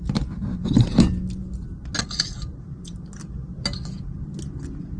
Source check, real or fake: real